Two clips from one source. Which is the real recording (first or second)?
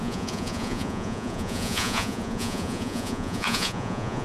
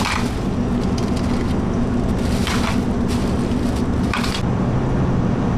second